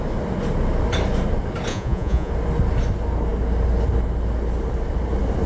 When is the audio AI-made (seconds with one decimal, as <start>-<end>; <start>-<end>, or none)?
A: 1.7-2.3